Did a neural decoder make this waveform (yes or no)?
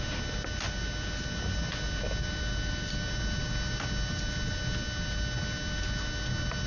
no